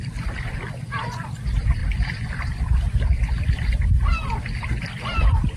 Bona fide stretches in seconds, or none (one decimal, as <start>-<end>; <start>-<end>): none